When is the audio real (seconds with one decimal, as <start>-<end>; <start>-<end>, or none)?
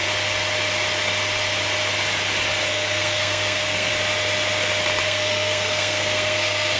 0.0-2.7; 3.9-5.0